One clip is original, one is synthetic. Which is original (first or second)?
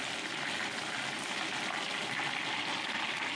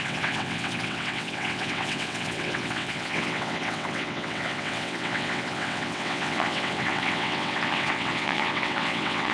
first